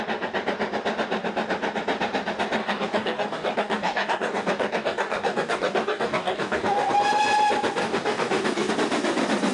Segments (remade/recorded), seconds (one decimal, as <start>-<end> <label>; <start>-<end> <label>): 0.0-2.6 recorded; 2.6-6.9 remade; 6.9-7.8 recorded; 7.8-8.7 remade; 8.7-9.5 recorded

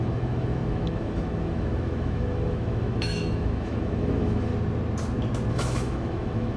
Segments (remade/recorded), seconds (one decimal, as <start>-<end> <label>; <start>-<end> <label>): 0.0-4.5 remade; 4.5-5.5 recorded; 5.5-6.6 remade

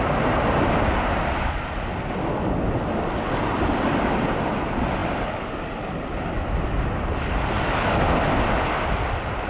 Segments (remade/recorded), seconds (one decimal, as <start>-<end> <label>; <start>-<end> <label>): 0.0-9.5 recorded

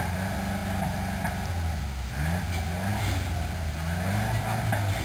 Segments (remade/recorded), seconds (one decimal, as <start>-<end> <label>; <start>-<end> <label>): 0.0-5.0 recorded

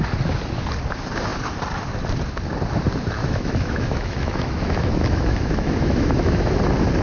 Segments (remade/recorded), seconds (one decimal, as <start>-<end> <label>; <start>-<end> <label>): 0.0-3.2 recorded; 3.2-6.5 remade; 6.5-7.0 recorded